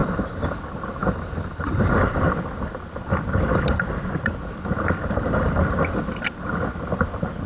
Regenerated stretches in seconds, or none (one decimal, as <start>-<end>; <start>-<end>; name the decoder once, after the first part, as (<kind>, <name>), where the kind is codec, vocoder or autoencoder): 0.0-0.6 (vocoder, BigVGAN v2); 1.0-1.9